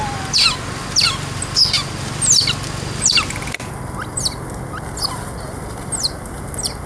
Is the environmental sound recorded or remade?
recorded